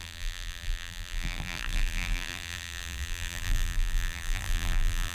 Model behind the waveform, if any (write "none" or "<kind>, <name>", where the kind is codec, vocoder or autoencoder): vocoder, BigVGAN v2